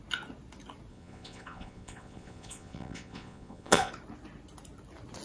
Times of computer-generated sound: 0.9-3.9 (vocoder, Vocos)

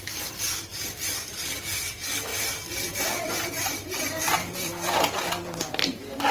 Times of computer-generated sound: 0.0-6.3 (vocoder, BigVGAN v2)